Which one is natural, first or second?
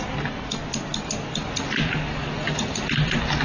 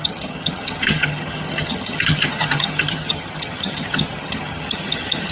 first